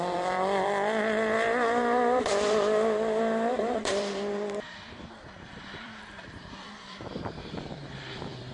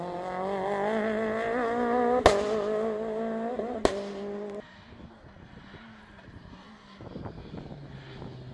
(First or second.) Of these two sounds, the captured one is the second